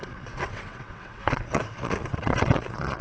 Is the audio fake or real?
fake